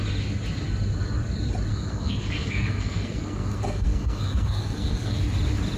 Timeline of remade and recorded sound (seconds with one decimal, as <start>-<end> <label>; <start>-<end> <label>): 0.0-1.7 recorded; 1.7-5.2 remade; 5.2-5.8 recorded